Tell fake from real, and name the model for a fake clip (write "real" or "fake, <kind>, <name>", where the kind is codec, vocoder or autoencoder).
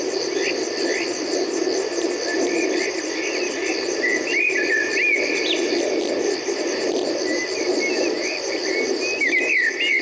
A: real